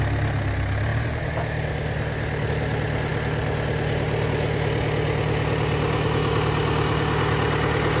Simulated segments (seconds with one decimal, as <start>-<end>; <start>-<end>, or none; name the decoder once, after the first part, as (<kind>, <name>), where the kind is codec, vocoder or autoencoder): none

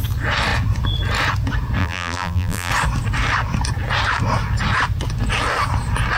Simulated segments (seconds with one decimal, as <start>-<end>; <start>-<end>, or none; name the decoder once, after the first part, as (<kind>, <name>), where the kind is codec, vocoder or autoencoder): 1.8-2.7 (vocoder, BigVGAN v2)

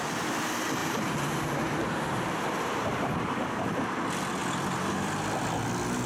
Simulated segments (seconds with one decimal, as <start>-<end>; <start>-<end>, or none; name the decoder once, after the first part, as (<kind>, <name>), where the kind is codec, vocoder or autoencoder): 0.8-3.8 (vocoder, BigVGAN v2)

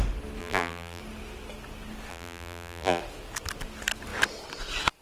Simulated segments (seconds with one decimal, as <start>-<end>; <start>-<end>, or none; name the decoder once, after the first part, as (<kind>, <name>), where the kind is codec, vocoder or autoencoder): 0.4-1.0 (vocoder, BigVGAN v2); 2.1-3.0

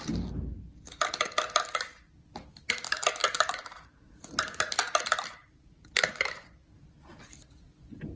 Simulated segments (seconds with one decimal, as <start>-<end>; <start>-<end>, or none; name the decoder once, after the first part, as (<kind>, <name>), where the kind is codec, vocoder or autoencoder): 3.2-4.7 (vocoder, BigVGAN v2); 5.4-7.2